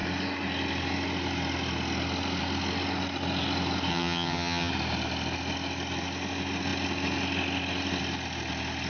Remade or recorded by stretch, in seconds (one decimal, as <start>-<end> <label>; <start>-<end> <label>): 0.0-3.9 recorded; 3.9-4.7 remade; 4.7-8.9 recorded